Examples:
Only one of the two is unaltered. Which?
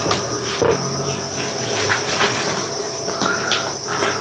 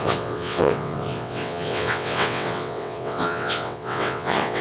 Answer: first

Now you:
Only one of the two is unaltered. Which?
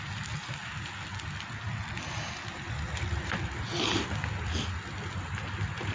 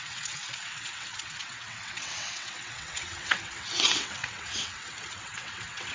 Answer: first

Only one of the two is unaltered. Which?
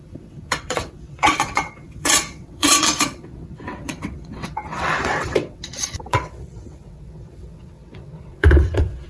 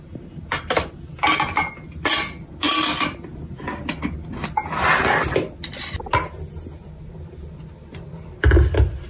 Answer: second